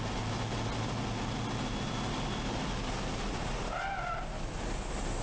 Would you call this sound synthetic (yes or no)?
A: no